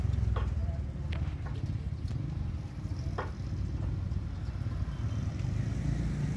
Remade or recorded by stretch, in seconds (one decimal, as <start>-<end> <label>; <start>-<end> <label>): 0.0-6.4 recorded